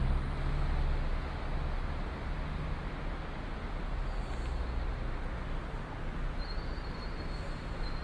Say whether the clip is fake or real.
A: real